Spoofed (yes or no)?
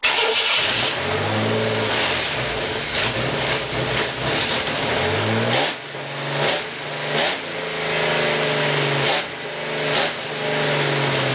no